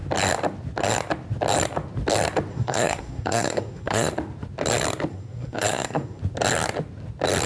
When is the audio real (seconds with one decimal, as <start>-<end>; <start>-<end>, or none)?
0.0-2.5; 4.1-5.1; 6.2-7.5

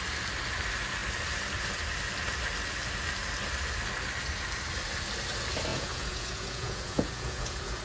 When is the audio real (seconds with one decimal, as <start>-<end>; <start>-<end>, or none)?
0.0-5.7

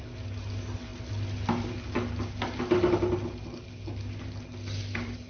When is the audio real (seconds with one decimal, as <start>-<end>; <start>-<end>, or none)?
0.0-5.3

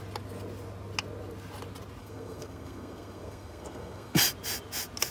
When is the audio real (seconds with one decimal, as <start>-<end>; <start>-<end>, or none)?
0.0-2.0; 4.2-5.1

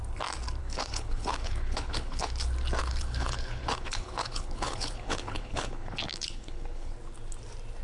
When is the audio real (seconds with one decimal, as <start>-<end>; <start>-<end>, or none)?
0.0-0.6; 2.3-2.8; 6.9-7.8

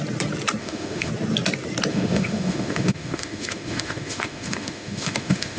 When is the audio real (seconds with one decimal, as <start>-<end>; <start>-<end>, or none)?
0.0-0.6; 1.1-1.9

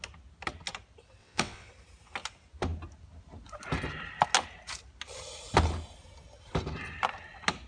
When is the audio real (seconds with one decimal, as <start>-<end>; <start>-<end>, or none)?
0.0-1.2; 1.7-7.7

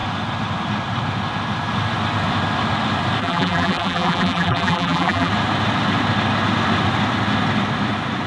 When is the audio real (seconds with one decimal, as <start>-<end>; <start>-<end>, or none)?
0.0-3.2; 5.3-8.3